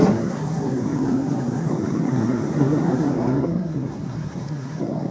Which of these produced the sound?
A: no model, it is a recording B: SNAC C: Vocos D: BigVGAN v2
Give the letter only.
B